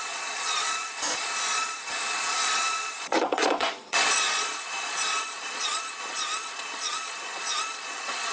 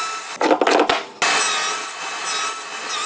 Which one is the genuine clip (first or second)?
second